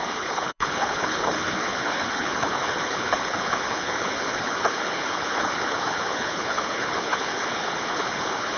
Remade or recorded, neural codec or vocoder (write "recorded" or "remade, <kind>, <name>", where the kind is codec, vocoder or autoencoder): remade, codec, HILCodec